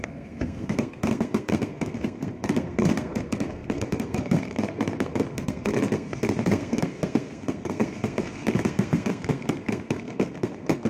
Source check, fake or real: fake